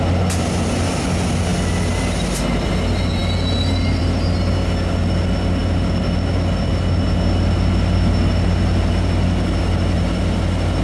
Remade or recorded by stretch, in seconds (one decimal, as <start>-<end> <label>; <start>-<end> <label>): 0.0-10.8 recorded